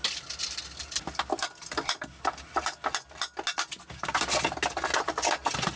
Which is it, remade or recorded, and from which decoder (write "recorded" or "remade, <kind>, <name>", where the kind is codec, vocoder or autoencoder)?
recorded